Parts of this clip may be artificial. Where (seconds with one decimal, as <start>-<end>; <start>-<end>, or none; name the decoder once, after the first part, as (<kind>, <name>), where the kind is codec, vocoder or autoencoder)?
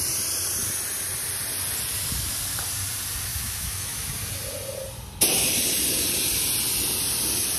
3.3-4.1 (autoencoder, DAC-VAE)